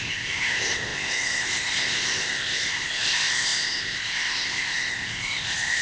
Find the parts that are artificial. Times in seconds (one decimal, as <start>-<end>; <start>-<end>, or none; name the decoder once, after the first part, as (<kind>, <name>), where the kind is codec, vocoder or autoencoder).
0.0-5.8 (codec, ZipCodec)